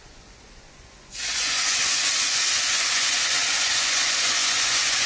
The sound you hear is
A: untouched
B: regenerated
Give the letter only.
B